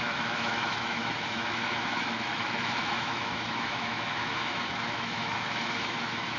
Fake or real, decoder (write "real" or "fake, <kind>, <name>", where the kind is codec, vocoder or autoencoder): fake, autoencoder, DAC-VAE